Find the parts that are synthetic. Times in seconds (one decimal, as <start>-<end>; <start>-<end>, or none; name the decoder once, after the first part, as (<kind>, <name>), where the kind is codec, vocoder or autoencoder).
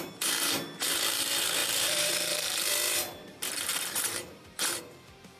0.0-5.4 (vocoder, BigVGAN v2)